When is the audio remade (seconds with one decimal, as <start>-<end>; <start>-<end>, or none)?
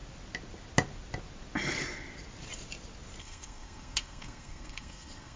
3.2-5.4